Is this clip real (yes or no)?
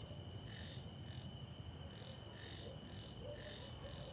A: yes